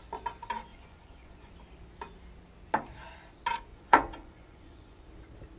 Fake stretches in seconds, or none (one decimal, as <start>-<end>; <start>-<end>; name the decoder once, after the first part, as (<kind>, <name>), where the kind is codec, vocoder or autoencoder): 0.7-1.5 (vocoder, Vocos); 3.7-5.0